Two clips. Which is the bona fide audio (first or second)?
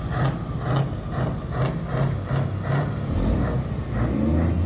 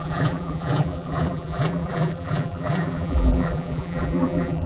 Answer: first